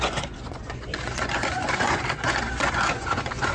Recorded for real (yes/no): no